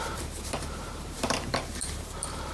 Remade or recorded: remade